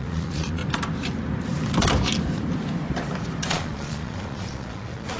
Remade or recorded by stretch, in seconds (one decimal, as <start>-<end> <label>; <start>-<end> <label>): 0.0-0.6 remade; 0.6-3.5 recorded; 3.5-5.2 remade